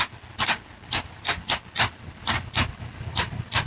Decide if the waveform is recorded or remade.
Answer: recorded